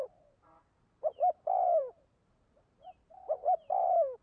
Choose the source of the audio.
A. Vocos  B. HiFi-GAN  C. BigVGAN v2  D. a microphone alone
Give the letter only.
C